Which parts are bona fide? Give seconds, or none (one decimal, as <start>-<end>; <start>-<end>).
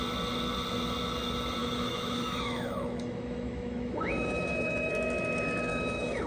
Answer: 0.0-1.6; 4.9-5.7